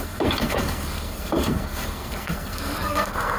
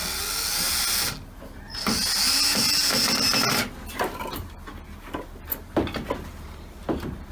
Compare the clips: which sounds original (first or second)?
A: second